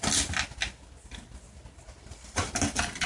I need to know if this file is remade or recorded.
recorded